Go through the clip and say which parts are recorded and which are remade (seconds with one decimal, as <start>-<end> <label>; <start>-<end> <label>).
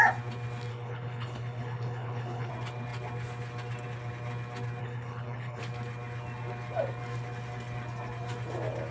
0.0-0.7 recorded; 0.7-2.5 remade; 2.5-4.8 recorded; 4.8-5.6 remade; 5.6-8.9 recorded